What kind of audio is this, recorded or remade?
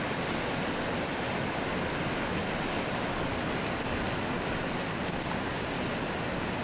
recorded